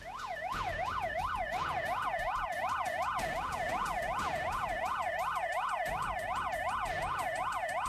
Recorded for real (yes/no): no